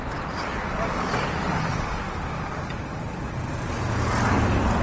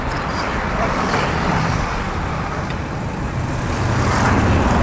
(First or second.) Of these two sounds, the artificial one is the second